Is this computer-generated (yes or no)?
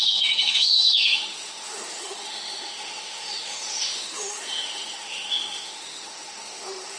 yes